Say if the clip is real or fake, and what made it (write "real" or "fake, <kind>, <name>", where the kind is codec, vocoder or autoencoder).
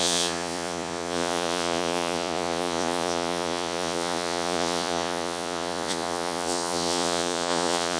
fake, vocoder, Vocos